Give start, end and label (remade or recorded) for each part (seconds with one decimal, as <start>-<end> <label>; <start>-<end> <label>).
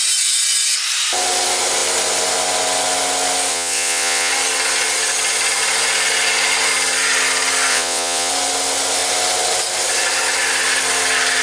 0.0-3.5 recorded; 3.5-4.3 remade; 4.3-7.7 recorded; 7.7-8.3 remade; 8.3-11.4 recorded